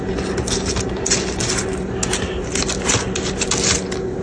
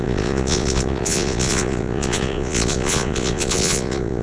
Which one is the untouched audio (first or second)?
first